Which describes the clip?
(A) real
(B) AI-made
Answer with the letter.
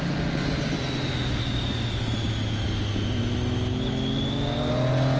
A